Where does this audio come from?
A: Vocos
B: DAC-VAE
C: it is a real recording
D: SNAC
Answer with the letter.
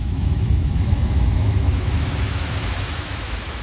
B